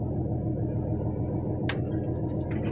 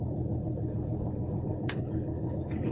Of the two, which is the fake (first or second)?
second